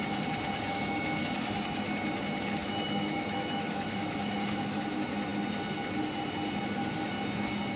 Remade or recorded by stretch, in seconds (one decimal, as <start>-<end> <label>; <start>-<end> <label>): 0.0-0.7 recorded; 0.7-1.2 remade; 1.2-2.6 recorded; 2.6-4.8 remade; 4.8-7.8 recorded